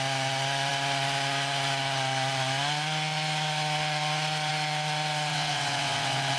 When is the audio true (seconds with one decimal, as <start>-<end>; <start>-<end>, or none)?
0.0-5.3